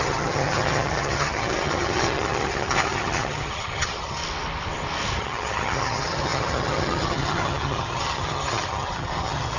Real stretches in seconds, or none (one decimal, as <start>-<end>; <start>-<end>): 4.2-5.2